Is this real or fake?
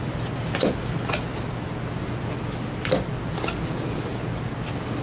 real